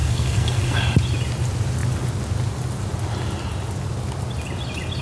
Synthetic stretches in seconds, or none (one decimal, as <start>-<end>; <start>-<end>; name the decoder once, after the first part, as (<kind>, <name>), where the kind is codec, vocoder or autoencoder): 0.0-0.8 (codec, SNAC)